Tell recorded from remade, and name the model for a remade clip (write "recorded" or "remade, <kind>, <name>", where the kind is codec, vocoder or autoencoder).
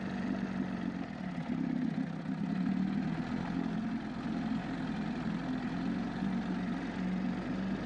recorded